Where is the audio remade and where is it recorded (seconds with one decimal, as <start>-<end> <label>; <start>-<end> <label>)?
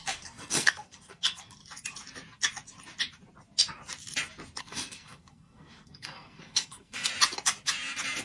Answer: 0.0-1.6 remade; 1.6-4.6 recorded; 4.6-7.1 remade; 7.1-8.2 recorded